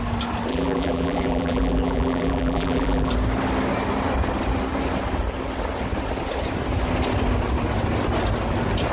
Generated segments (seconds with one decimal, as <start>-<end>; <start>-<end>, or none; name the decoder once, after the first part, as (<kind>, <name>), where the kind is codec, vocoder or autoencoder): 0.5-3.1 (vocoder, BigVGAN v2)